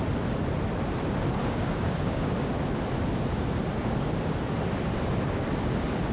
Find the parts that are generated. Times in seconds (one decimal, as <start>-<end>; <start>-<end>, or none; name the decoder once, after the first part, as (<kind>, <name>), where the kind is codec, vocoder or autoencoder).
1.4-2.5 (codec, DAC)